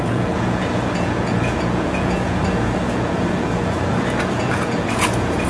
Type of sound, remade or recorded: remade